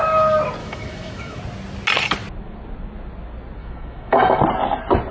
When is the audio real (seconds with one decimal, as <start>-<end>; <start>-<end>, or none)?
0.0-0.6; 1.4-3.6; 4.4-5.1